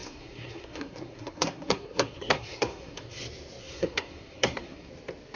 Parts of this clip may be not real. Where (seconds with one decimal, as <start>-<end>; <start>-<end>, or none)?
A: 0.0-3.2; 3.6-4.9